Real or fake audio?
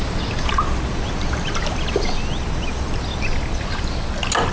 real